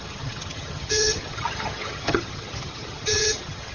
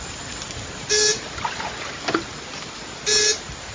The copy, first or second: first